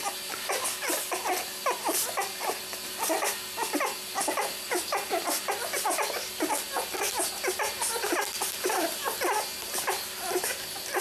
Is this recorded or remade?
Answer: recorded